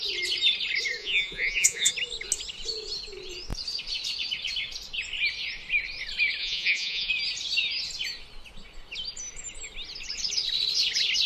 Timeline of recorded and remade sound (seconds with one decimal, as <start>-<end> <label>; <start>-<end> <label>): 0.0-1.0 recorded; 1.0-1.9 remade; 1.9-6.4 recorded; 6.4-7.1 remade; 7.1-11.3 recorded